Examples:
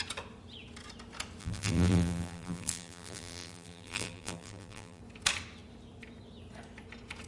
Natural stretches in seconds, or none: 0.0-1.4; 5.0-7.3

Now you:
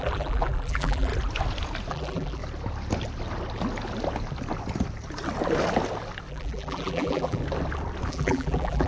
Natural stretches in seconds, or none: 1.1-1.9; 2.4-6.3; 7.4-8.1

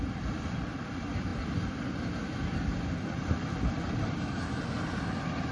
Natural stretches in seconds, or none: 1.3-2.9

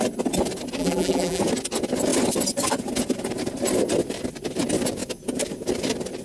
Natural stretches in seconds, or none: 0.0-0.8; 1.4-6.2

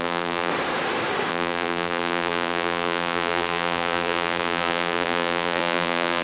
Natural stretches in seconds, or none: 0.5-1.3

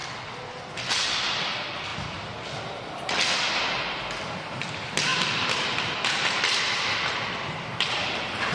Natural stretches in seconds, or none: 0.6-5.1; 7.5-8.5

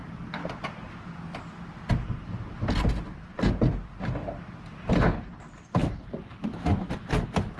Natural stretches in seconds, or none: 0.0-5.8; 6.5-7.6